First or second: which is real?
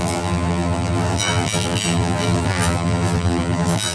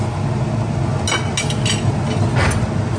second